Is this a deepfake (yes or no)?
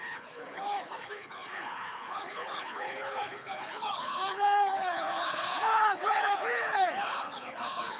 yes